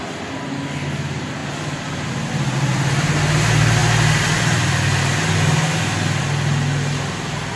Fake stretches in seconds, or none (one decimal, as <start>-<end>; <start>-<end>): none